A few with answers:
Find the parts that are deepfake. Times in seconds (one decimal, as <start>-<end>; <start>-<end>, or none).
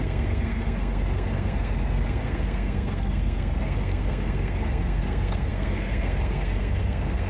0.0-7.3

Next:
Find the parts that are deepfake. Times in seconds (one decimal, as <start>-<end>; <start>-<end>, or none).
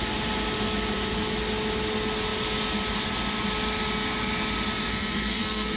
4.9-5.8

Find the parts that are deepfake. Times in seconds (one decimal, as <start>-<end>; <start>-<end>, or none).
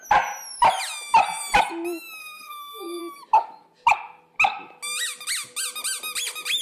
2.2-3.0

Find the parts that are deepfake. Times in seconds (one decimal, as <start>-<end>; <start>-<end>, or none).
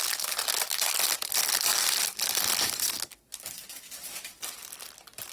none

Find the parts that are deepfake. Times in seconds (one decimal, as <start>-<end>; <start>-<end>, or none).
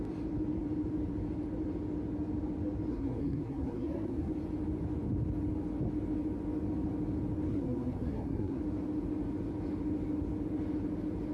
2.9-4.3; 7.5-8.6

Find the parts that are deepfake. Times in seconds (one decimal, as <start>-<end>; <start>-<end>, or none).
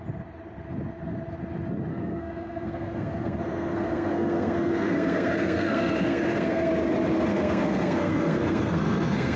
1.9-6.7; 7.3-9.4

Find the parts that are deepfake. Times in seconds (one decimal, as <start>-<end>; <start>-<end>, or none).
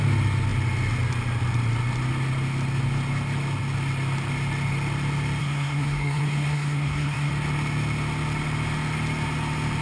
5.4-7.3